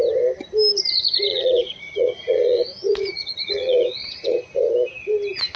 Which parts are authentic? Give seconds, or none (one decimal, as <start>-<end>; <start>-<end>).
0.0-1.3; 4.7-5.6